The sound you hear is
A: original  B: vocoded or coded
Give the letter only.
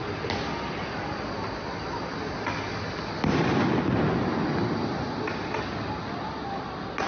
A